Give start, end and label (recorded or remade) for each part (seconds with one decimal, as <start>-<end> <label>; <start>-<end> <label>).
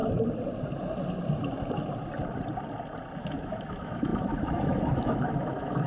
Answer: 0.0-3.2 recorded; 3.2-5.9 remade